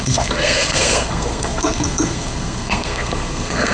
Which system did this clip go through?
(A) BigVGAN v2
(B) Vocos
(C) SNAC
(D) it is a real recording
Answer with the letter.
C